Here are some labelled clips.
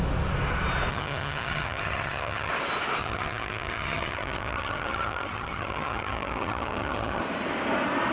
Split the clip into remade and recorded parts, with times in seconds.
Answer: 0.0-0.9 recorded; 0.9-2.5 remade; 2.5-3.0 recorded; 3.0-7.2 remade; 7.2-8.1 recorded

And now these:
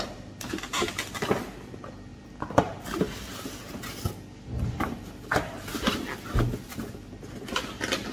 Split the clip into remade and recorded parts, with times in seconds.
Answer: 0.0-8.1 recorded

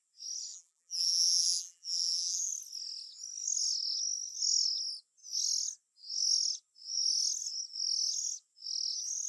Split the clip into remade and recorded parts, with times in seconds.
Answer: 0.0-0.5 recorded; 0.5-2.5 remade; 2.5-9.3 recorded

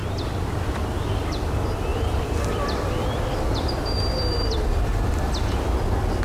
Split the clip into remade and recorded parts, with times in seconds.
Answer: 0.0-1.5 remade; 1.5-1.9 recorded; 1.9-5.1 remade; 5.1-6.2 recorded